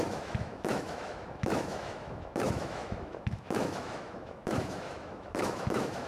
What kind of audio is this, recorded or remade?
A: remade